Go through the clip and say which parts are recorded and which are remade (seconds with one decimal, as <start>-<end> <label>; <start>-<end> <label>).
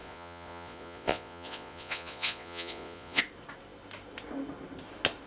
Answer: 0.0-3.2 remade; 3.2-5.3 recorded